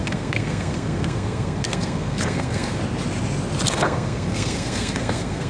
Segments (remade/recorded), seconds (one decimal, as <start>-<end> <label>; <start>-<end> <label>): 0.0-2.8 remade; 2.8-3.7 recorded; 3.7-5.5 remade